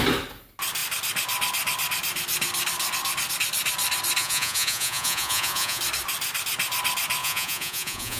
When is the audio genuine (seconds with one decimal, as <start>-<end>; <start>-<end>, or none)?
0.0-4.2; 5.8-7.2